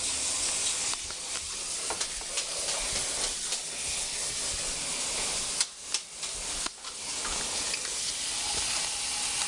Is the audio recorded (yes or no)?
yes